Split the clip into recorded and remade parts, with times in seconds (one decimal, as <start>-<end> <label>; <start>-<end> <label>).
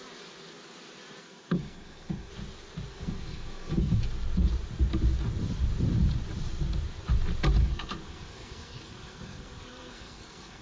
0.0-1.2 recorded; 1.2-2.3 remade; 2.3-2.9 recorded; 2.9-4.0 remade; 4.0-7.6 recorded; 7.6-10.6 remade